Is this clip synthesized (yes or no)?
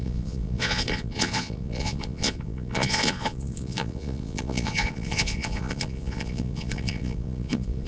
yes